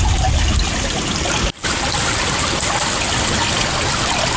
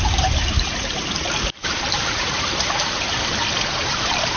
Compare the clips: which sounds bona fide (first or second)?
first